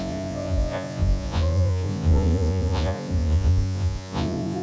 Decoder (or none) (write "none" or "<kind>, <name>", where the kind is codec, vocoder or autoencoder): vocoder, Vocos